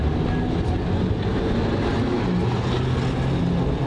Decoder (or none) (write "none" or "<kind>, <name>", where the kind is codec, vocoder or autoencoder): none